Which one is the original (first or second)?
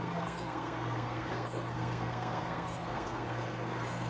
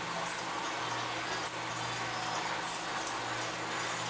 second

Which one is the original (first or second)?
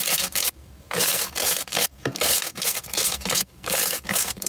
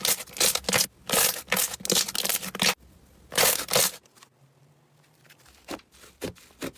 second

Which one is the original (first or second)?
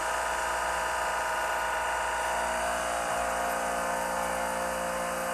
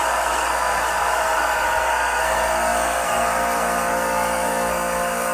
first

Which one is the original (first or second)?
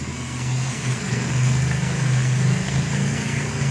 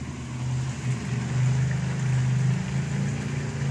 second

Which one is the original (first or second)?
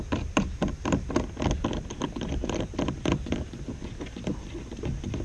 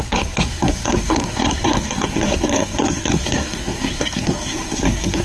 first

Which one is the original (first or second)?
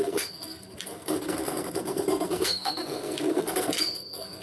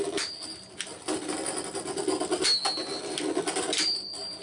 second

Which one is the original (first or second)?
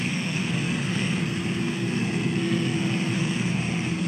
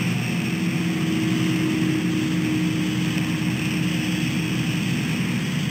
second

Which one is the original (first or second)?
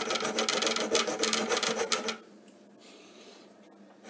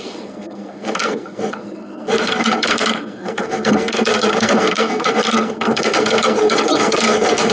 first